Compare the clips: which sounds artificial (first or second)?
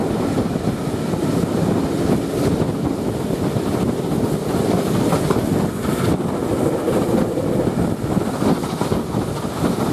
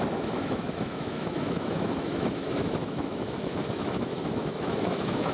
second